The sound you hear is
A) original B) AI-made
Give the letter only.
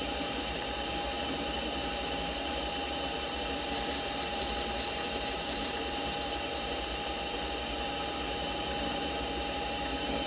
B